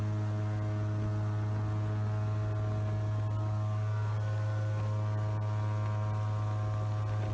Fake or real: real